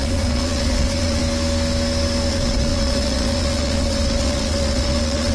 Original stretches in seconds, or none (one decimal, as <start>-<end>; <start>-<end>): 1.2-2.3